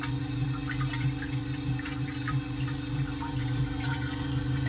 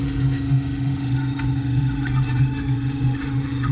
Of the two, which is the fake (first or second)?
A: second